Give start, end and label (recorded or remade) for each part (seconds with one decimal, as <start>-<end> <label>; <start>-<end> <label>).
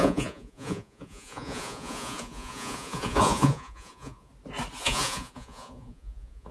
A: 0.0-4.3 remade; 4.3-4.8 recorded; 4.8-6.5 remade